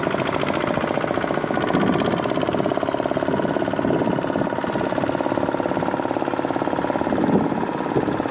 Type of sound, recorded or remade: recorded